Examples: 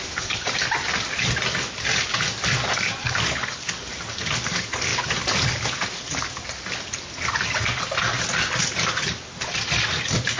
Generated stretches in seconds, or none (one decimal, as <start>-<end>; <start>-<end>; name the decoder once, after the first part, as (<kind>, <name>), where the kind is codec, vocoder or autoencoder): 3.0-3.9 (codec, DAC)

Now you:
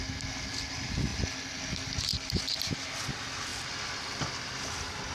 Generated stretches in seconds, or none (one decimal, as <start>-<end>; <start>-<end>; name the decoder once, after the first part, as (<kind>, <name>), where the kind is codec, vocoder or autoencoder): none

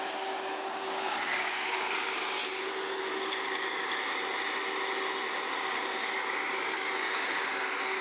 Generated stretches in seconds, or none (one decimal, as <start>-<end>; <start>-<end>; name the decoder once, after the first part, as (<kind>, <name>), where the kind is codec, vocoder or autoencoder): 0.0-2.4 (codec, DAC); 3.1-3.9; 5.6-8.0

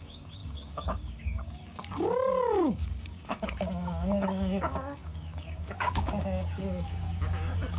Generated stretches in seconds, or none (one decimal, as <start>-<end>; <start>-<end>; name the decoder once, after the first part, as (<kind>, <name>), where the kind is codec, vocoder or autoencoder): 0.0-7.8 (codec, DAC)

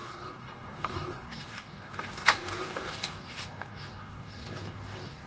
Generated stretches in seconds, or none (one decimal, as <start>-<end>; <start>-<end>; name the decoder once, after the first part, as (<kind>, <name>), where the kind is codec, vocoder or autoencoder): 0.0-5.3 (codec, DAC)

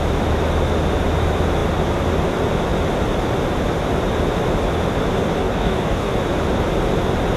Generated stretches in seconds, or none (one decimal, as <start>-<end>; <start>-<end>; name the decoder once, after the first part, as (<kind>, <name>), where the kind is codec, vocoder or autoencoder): 5.4-6.1 (codec, DAC)

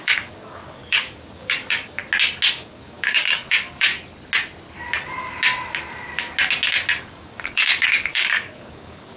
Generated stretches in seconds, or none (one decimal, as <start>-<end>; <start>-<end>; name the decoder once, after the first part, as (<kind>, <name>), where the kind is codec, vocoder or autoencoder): 0.0-2.0 (codec, DAC); 2.5-3.9; 7.0-9.2

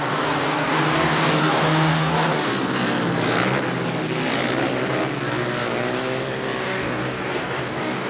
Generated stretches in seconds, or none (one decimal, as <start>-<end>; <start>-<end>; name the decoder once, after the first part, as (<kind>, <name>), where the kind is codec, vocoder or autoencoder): 0.0-2.5 (codec, DAC); 6.6-8.1